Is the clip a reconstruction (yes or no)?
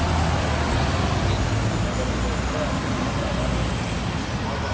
no